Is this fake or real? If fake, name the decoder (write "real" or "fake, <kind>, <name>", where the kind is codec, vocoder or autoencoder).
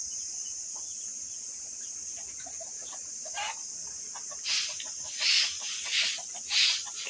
real